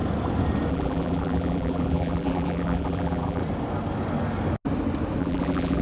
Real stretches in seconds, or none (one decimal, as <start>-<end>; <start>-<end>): 0.0-0.7; 3.4-5.2